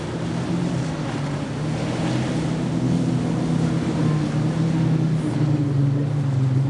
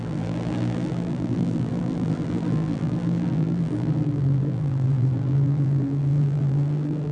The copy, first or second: second